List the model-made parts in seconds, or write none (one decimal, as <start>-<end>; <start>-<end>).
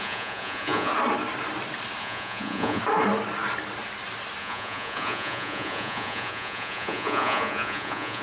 0.0-0.9; 2.0-2.8; 4.4-8.2